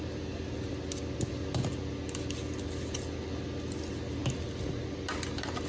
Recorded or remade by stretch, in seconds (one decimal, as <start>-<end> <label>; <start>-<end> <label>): 0.0-5.7 recorded